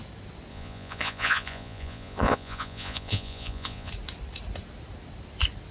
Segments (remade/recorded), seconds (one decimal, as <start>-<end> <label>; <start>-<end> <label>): 0.0-0.5 recorded; 0.5-3.9 remade; 3.9-5.7 recorded